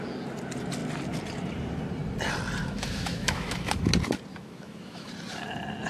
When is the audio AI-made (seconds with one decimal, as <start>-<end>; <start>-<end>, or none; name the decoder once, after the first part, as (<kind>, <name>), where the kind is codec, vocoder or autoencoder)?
2.6-3.9 (autoencoder, DAC-VAE); 4.3-5.1

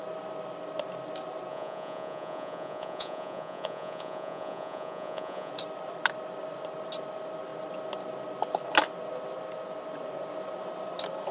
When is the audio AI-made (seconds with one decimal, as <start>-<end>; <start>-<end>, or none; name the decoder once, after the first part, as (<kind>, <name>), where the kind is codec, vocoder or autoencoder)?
1.5-5.5 (vocoder, Vocos)

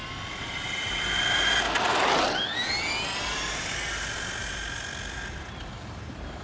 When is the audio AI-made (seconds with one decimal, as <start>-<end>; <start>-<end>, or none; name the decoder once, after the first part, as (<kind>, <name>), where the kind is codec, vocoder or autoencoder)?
none

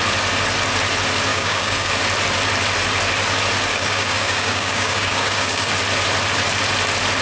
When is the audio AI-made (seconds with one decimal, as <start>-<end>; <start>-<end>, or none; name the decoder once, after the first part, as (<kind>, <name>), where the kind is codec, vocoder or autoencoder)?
1.3-1.9 (codec, DAC); 3.7-5.7

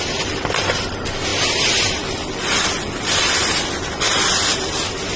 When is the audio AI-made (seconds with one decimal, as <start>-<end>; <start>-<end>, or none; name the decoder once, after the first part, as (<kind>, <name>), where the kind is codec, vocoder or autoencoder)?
none

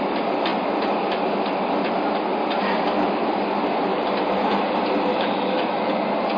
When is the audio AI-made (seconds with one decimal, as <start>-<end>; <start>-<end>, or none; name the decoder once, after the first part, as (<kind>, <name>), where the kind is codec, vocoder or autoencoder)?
5.1-5.9 (autoencoder, DAC-VAE)

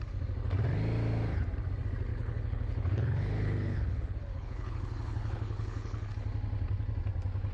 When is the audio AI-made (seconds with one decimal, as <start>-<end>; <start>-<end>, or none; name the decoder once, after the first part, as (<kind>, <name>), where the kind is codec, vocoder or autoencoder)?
2.1-6.1 (codec, HILCodec)